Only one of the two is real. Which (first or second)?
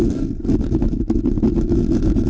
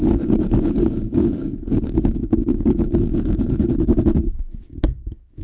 first